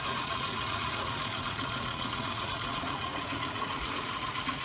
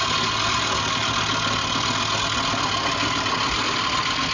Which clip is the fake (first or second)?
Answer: first